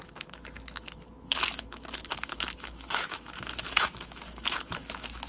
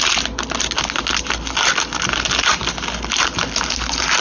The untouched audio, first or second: second